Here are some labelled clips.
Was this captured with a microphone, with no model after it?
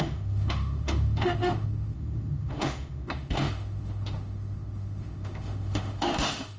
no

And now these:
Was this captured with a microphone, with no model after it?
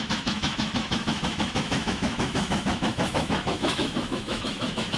no